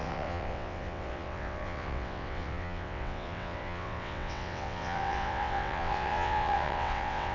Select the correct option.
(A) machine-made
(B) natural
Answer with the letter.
A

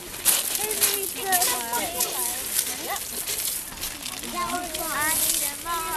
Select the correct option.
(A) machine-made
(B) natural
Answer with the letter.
B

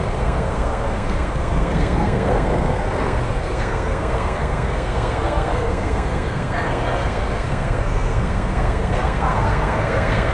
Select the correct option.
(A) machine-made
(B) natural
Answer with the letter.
A